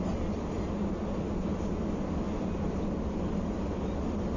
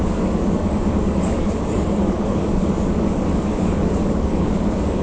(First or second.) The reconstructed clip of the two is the second